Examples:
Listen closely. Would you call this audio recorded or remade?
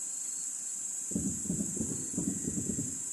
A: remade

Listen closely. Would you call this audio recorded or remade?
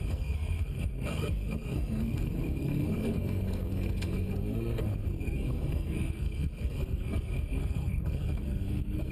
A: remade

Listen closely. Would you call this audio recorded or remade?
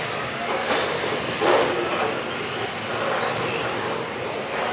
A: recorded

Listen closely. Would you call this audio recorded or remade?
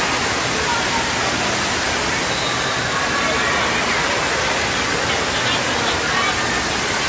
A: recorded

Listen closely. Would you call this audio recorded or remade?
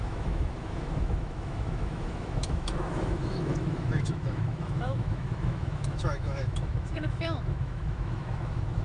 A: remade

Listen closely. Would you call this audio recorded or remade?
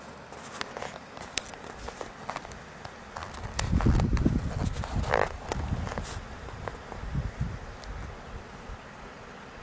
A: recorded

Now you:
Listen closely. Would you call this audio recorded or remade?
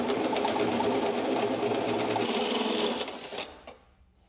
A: recorded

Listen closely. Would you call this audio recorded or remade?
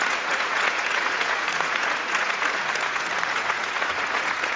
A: remade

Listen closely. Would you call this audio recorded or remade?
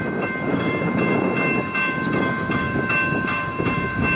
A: remade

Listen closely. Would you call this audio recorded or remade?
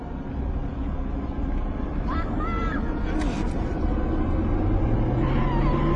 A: recorded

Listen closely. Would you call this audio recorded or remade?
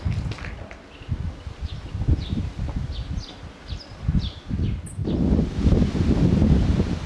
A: recorded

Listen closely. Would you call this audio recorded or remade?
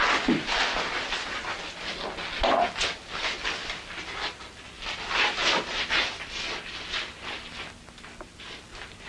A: recorded